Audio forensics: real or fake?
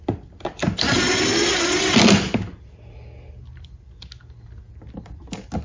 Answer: real